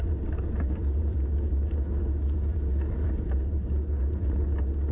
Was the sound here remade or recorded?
recorded